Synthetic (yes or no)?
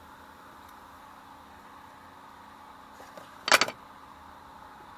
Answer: no